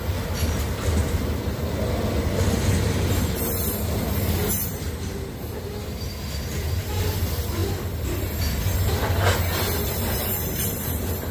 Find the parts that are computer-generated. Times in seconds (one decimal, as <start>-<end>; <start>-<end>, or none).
none

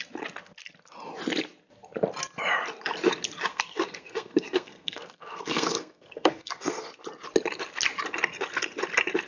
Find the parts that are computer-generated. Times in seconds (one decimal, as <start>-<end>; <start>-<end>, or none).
3.5-6.9

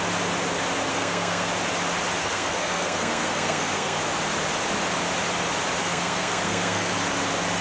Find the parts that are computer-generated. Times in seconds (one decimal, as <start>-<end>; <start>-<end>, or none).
0.9-1.5; 2.2-4.0; 5.8-6.9